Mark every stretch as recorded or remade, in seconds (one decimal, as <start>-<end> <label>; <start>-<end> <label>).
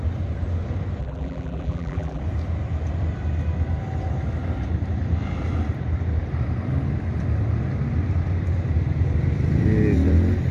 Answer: 0.0-1.0 recorded; 1.0-2.2 remade; 2.2-10.5 recorded